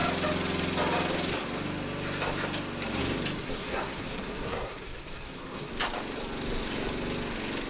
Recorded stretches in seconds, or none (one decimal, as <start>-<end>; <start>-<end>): 0.0-3.4; 5.7-7.7